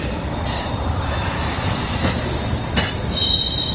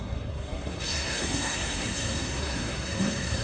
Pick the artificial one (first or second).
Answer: second